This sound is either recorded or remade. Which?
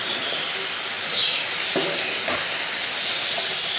recorded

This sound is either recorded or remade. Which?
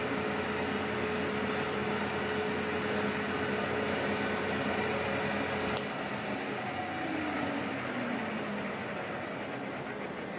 recorded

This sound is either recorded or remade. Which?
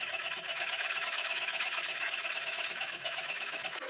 remade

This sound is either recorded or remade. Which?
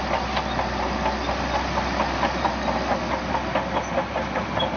recorded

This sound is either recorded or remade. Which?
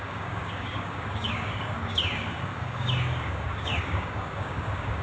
remade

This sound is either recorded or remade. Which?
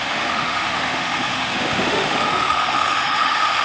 remade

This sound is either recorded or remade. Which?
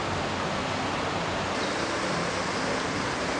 recorded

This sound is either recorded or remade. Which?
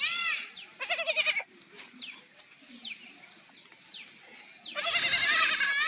recorded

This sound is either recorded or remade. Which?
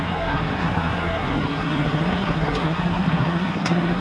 remade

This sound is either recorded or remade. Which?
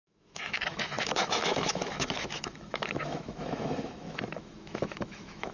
remade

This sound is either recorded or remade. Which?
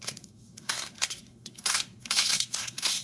remade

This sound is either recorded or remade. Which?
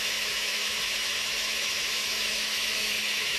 remade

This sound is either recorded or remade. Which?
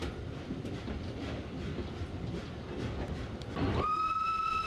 recorded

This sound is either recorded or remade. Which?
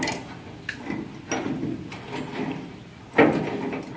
recorded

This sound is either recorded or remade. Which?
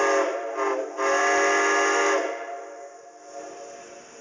recorded